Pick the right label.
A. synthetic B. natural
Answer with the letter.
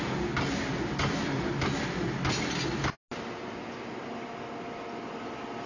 B